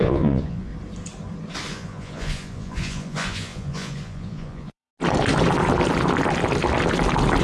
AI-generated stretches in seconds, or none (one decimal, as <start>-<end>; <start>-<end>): 0.0-0.7; 1.7-4.9

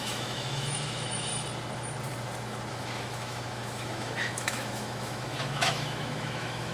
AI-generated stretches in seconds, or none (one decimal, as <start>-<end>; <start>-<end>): 0.0-1.3; 2.7-6.7

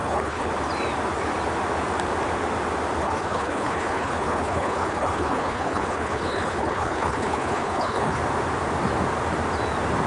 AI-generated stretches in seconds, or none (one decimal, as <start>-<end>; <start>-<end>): 0.0-0.5; 3.0-8.2